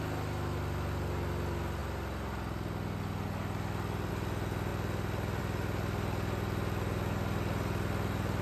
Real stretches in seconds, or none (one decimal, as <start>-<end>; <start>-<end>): 0.0-8.4